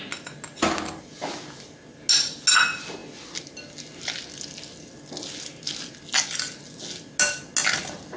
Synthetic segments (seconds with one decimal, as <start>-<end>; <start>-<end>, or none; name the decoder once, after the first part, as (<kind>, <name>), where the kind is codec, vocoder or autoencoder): none